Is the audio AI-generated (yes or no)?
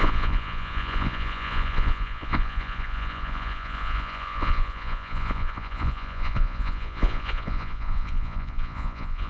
yes